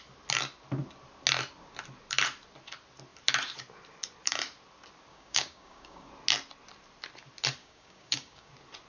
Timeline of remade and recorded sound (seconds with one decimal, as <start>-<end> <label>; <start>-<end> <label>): 0.0-5.1 recorded; 5.1-6.1 remade; 6.1-7.6 recorded; 7.6-8.5 remade; 8.5-8.9 recorded